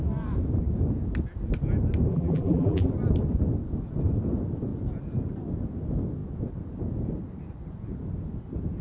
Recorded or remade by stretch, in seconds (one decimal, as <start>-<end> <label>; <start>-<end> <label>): 0.0-2.1 recorded; 2.1-2.9 remade; 2.9-8.8 recorded